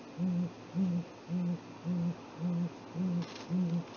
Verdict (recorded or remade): recorded